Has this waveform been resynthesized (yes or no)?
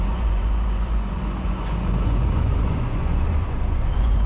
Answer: yes